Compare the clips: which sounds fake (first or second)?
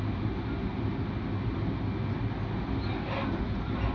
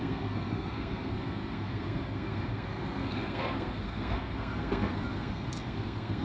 second